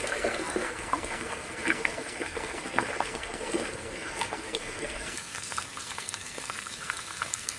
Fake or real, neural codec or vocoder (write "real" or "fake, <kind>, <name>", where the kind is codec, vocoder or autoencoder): fake, codec, SNAC